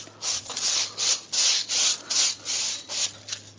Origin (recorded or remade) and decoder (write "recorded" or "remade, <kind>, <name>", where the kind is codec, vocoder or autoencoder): recorded